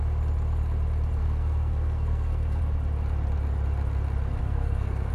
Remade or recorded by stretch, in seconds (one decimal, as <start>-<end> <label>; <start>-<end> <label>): 0.0-1.2 recorded; 1.2-2.6 remade; 2.6-4.4 recorded; 4.4-5.1 remade